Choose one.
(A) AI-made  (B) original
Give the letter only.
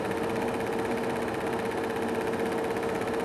B